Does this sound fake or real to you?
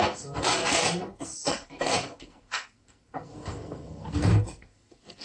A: fake